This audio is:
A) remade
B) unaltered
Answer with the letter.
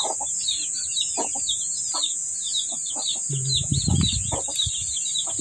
B